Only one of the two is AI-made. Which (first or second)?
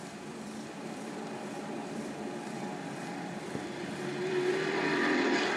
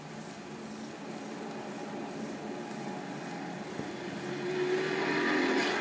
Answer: first